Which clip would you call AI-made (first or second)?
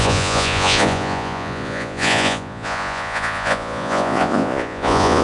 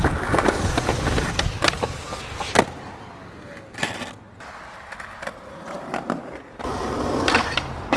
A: first